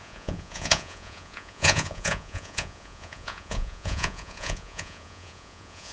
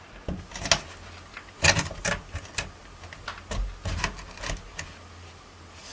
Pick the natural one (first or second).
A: second